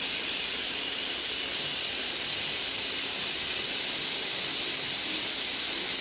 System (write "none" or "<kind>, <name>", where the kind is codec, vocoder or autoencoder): none